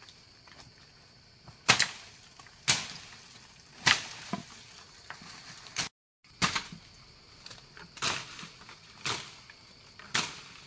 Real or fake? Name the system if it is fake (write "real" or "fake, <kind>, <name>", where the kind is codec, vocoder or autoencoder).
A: real